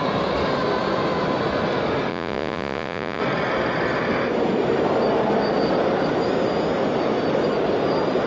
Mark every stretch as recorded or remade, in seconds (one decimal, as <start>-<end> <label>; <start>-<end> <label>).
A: 0.0-2.1 recorded; 2.1-3.2 remade; 3.2-8.3 recorded